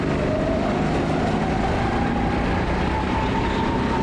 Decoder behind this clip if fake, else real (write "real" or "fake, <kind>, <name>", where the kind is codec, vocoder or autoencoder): real